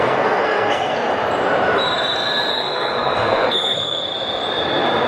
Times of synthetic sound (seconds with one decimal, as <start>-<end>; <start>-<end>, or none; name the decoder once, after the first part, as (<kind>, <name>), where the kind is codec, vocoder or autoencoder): 0.0-1.1 (codec, SNAC); 2.5-4.1